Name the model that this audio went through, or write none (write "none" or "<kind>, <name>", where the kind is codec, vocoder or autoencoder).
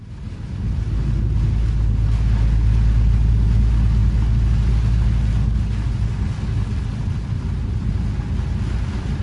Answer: none